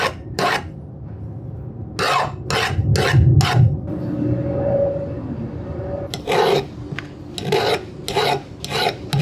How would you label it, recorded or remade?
recorded